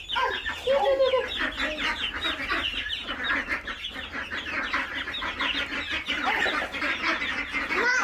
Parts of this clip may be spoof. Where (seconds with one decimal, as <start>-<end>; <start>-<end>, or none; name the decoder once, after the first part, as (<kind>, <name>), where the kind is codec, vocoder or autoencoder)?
none